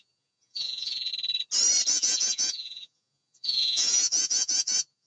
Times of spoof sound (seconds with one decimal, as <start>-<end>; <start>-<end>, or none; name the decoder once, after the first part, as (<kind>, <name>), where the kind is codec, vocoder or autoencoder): 0.0-1.1 (vocoder, Vocos); 1.9-5.1